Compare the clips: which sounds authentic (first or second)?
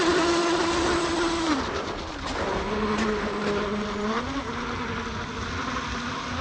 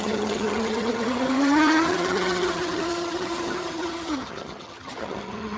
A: first